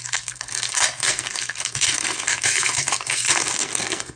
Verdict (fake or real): fake